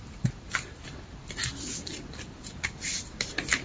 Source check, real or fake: real